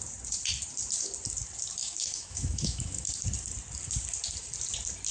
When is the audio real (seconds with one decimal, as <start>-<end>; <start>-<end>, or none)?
0.0-1.8; 3.1-5.1